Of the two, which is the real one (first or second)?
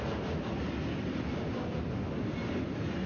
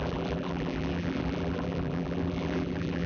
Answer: first